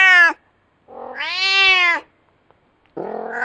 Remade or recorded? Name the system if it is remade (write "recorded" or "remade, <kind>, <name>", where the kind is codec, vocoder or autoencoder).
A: recorded